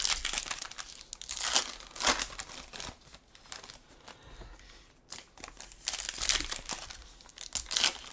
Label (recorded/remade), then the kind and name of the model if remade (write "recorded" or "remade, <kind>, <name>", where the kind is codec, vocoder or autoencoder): recorded